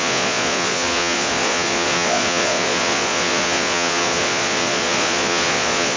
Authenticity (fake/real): fake